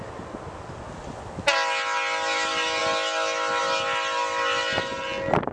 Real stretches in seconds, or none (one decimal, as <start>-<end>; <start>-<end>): 0.0-5.5